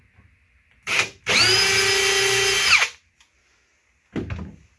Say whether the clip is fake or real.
real